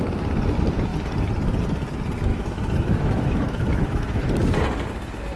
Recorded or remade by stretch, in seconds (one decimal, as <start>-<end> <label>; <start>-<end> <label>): 0.0-2.3 recorded; 2.3-4.2 remade; 4.2-5.4 recorded